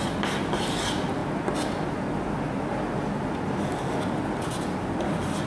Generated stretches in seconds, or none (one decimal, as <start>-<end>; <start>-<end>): none